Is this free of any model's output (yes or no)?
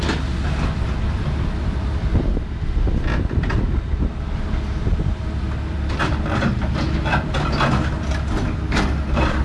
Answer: yes